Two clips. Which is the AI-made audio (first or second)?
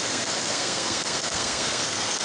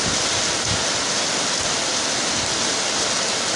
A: first